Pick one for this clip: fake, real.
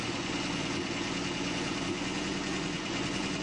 fake